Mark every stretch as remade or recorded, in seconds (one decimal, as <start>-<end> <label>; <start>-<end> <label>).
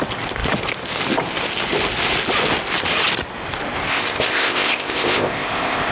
0.0-3.9 recorded; 3.9-5.9 remade